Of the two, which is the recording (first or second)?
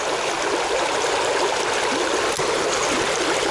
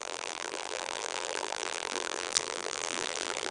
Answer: first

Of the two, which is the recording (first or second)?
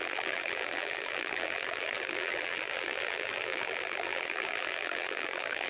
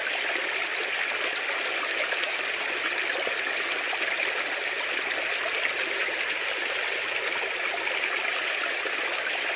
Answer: second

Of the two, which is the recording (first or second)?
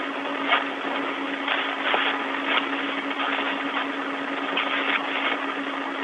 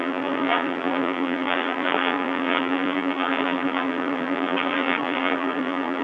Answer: first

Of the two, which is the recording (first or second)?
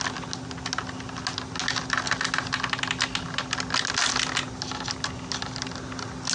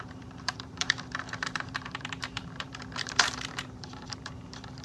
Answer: first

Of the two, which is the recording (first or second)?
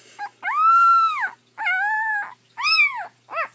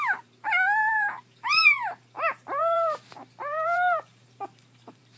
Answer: first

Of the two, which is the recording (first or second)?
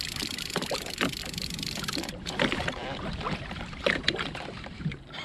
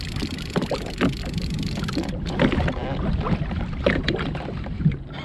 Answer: second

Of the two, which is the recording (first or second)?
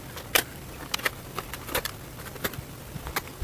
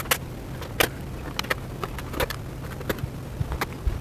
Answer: second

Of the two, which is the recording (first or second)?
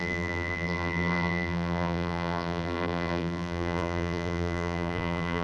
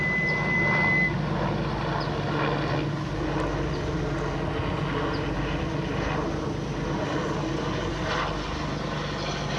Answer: second